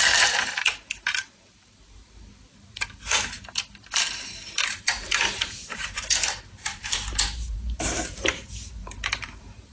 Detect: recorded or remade remade